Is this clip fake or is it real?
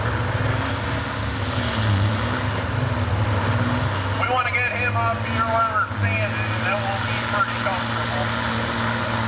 real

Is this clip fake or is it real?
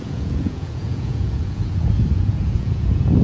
fake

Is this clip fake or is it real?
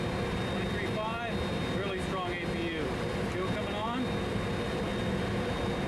real